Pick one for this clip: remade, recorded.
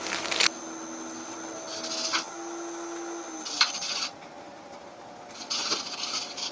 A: recorded